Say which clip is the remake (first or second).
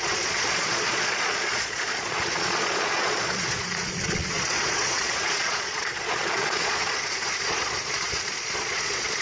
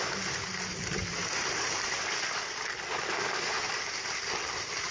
first